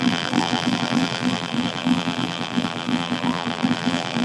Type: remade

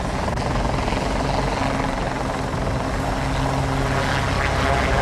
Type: recorded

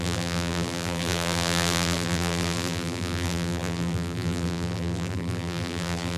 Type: remade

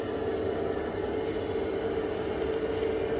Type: recorded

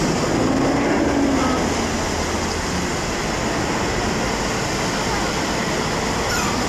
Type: recorded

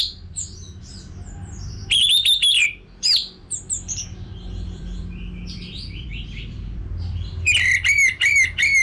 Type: remade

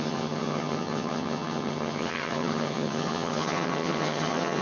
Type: remade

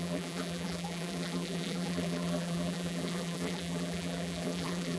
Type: remade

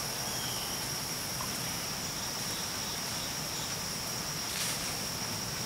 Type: recorded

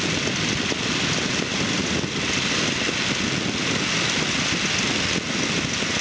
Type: recorded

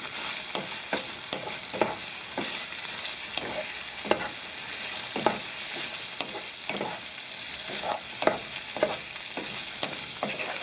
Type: recorded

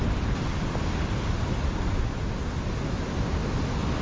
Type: recorded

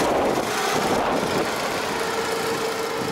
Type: recorded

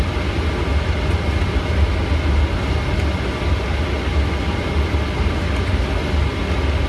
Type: recorded